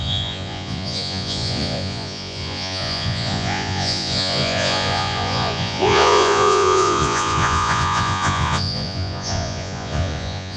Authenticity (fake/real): fake